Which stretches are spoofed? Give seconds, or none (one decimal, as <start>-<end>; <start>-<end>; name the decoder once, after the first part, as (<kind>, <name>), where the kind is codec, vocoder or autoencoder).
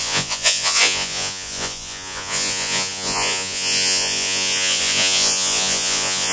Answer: 0.0-6.3 (vocoder, Vocos)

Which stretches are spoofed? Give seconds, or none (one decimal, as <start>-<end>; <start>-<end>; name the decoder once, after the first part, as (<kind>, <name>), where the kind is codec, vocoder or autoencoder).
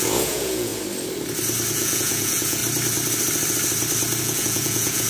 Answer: 0.0-0.7 (vocoder, Vocos); 1.7-2.6; 4.2-5.1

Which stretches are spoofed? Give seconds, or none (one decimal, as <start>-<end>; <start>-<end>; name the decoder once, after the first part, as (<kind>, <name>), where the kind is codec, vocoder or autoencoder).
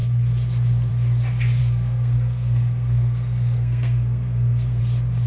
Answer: 1.6-4.8 (codec, SNAC)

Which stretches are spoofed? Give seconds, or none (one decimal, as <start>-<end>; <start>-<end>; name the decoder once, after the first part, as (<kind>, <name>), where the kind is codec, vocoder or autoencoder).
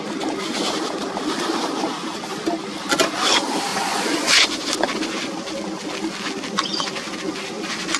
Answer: 3.7-4.7 (vocoder, Vocos)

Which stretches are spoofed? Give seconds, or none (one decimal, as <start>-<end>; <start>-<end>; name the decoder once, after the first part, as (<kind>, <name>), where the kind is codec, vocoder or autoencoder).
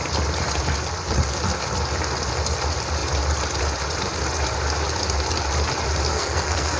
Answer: 6.1-6.8 (codec, SNAC)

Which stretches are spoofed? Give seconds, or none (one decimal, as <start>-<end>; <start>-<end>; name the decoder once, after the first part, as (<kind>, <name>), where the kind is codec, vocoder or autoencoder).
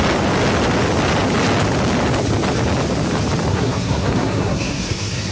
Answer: 3.5-5.3 (codec, SNAC)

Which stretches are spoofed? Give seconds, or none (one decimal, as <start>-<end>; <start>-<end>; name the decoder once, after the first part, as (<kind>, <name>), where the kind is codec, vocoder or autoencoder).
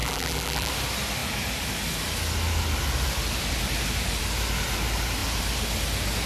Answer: 0.0-0.7 (vocoder, BigVGAN v2)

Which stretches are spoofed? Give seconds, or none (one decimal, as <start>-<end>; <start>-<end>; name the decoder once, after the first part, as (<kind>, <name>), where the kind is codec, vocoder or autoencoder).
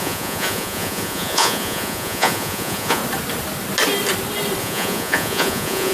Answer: 0.0-3.0 (vocoder, Vocos); 4.6-5.9